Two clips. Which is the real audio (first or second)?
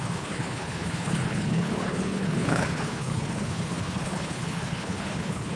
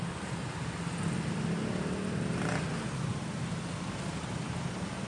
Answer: second